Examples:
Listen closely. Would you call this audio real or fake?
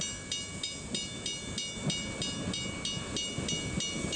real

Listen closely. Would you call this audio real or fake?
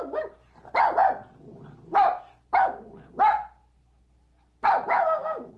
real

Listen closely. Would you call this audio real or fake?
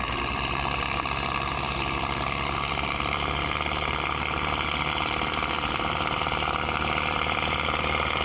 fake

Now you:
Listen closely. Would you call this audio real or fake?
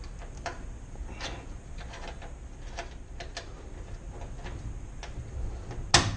real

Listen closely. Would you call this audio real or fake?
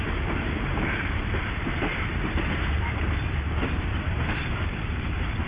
fake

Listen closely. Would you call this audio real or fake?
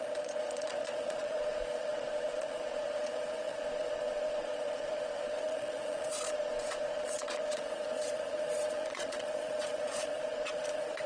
fake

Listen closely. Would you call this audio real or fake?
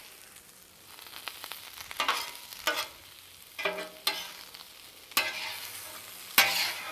real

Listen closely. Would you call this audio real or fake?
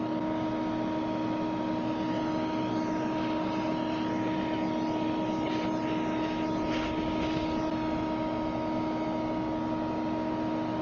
real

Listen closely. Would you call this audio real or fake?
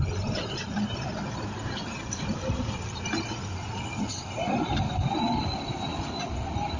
real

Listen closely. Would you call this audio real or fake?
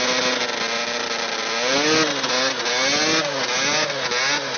real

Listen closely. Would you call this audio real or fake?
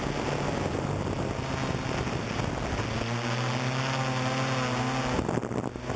real